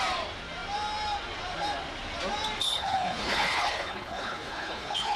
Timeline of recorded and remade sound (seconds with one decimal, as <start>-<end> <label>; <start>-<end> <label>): 0.0-2.6 recorded; 2.6-5.2 remade